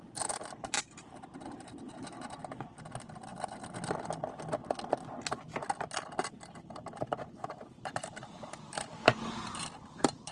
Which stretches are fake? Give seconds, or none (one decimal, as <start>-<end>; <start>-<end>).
0.0-2.4; 6.3-10.3